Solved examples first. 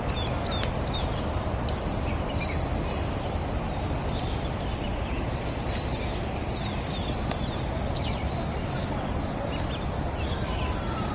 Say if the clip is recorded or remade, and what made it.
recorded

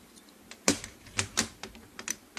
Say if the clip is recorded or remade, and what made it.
remade, vocoder, BigVGAN v2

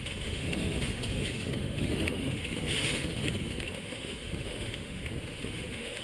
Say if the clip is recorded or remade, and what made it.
remade, autoencoder, DAC-VAE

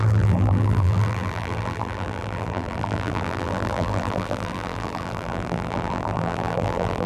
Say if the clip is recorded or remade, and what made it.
remade, vocoder, BigVGAN v2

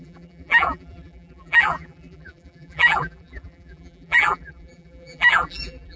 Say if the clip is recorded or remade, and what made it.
remade, vocoder, BigVGAN v2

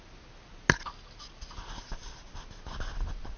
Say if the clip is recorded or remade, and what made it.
recorded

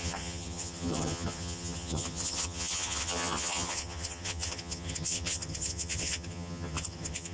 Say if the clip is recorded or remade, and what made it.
remade, vocoder, HiFi-GAN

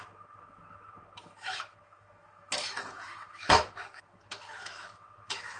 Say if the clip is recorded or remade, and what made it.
remade, autoencoder, DAC-VAE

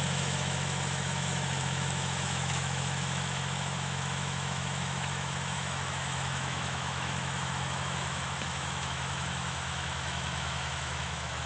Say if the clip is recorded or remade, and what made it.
remade, autoencoder, DAC-VAE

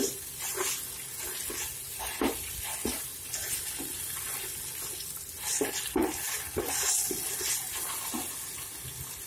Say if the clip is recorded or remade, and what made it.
recorded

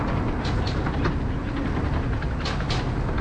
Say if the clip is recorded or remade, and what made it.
recorded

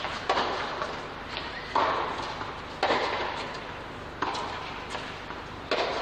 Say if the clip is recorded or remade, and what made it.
recorded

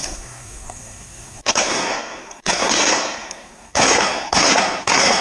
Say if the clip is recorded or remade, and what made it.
remade, codec, SNAC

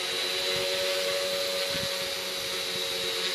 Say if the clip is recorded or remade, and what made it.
recorded